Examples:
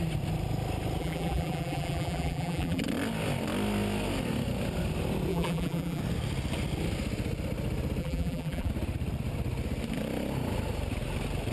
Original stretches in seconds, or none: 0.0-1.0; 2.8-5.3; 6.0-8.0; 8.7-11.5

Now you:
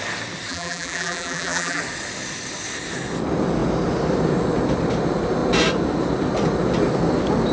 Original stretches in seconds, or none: 0.0-0.5; 1.8-7.5

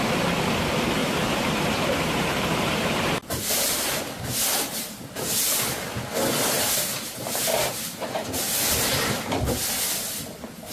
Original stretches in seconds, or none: 0.0-1.0; 4.0-7.5; 8.1-10.7

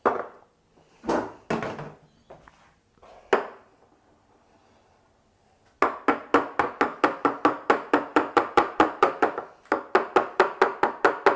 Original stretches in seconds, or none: 0.0-8.1; 9.3-11.4